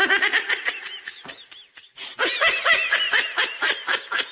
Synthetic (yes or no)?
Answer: no